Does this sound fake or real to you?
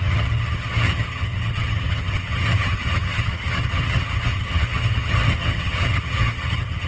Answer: fake